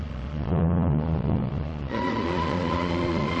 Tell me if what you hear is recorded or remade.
remade